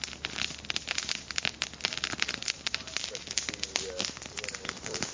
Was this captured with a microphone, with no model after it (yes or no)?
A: yes